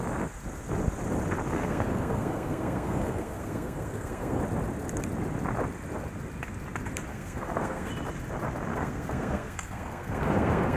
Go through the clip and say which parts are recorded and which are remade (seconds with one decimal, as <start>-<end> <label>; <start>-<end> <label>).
0.0-1.5 recorded; 1.5-4.4 remade; 4.4-7.1 recorded; 7.1-7.9 remade; 7.9-8.7 recorded; 8.7-10.8 remade